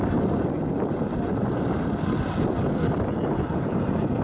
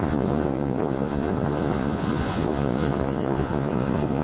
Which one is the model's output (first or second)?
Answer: second